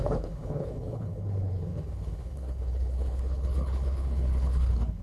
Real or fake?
fake